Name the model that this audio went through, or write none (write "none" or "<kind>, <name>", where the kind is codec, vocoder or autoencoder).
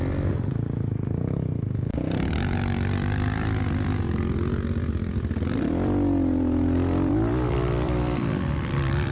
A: vocoder, BigVGAN v2